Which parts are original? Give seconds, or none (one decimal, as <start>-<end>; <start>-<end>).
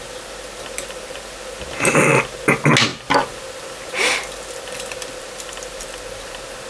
0.0-6.7